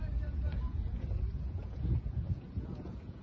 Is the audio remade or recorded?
remade